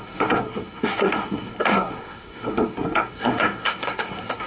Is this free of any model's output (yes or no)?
no